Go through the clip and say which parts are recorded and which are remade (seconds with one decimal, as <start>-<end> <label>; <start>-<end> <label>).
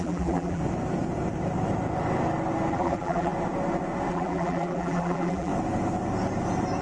0.0-0.6 remade; 0.6-2.7 recorded; 2.7-3.3 remade; 3.3-4.1 recorded; 4.1-5.5 remade; 5.5-6.8 recorded